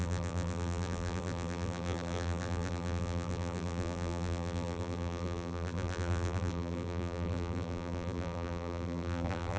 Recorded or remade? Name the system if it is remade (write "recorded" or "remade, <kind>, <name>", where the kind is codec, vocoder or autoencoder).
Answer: remade, vocoder, BigVGAN v2